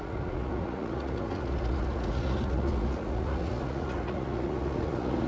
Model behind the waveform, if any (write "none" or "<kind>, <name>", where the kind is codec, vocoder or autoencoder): vocoder, Vocos